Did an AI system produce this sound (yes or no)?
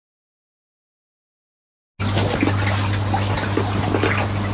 no